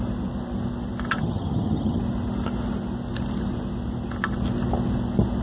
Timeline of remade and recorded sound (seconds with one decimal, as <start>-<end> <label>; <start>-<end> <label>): 0.0-1.2 recorded; 1.2-2.0 remade; 2.0-5.4 recorded